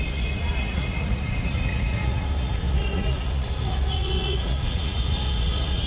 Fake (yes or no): yes